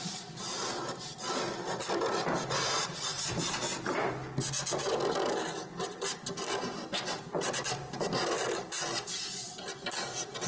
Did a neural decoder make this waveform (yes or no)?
no